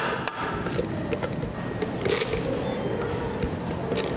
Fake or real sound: real